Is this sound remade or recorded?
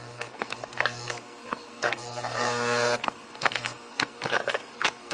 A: remade